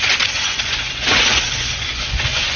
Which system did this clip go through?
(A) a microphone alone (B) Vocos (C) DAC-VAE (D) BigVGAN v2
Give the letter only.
B